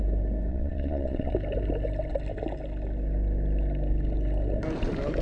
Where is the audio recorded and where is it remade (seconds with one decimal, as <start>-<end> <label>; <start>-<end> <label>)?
0.0-0.5 recorded; 0.5-1.3 remade; 1.3-5.2 recorded